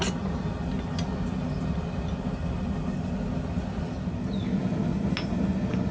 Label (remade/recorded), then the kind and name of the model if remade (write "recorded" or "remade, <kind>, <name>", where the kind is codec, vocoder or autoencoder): recorded